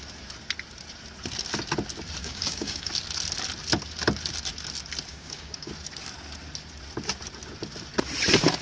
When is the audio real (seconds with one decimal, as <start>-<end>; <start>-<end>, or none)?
0.0-2.2; 2.9-5.1; 5.7-8.6